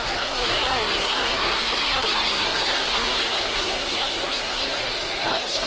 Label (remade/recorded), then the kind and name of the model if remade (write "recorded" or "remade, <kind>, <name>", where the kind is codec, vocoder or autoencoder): remade, codec, SNAC